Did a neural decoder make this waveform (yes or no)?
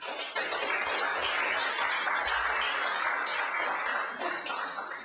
no